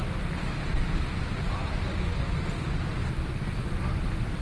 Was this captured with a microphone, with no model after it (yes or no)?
yes